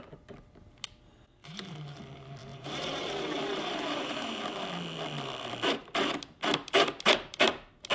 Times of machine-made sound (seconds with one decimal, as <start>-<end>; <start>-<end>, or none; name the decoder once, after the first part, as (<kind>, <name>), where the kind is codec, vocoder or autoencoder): 1.4-2.0 (vocoder, BigVGAN v2); 2.5-4.4